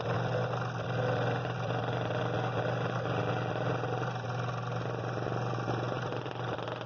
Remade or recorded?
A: recorded